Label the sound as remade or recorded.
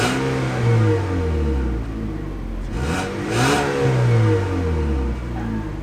recorded